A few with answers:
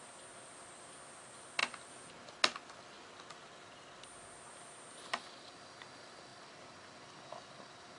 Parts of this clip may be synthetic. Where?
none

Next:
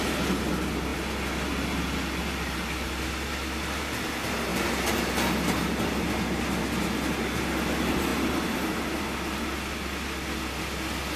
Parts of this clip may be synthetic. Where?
none

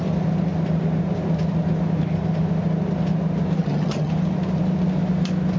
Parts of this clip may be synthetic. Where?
3.6-4.1 (vocoder, HiFi-GAN)

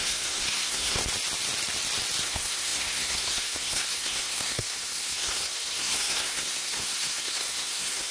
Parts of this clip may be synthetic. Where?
0.0-1.0 (codec, SNAC); 2.2-8.1

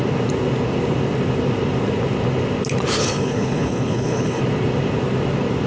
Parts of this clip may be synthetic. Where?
3.0-4.4 (codec, HILCodec)